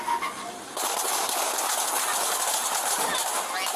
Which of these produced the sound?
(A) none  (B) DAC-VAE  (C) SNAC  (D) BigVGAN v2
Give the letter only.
A